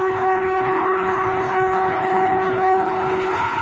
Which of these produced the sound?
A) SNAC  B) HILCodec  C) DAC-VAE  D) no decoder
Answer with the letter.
B